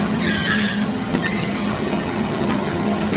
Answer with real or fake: fake